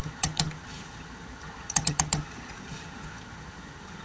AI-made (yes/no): yes